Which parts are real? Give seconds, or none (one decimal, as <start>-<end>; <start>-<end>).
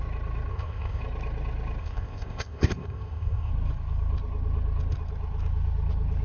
0.0-0.5; 1.0-1.8; 3.5-6.2